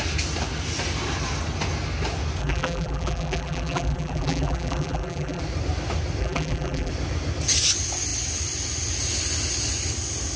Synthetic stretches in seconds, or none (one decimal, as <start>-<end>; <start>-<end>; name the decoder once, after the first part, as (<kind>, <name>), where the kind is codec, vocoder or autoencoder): 2.4-5.4 (vocoder, BigVGAN v2); 6.2-6.9